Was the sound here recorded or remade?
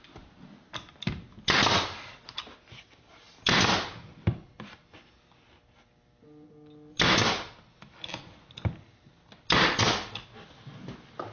recorded